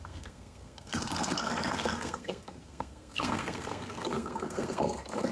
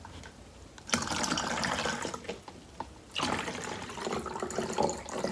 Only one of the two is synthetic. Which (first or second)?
first